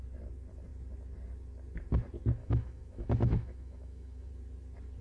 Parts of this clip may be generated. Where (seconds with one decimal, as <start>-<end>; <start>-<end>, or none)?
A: 2.4-4.3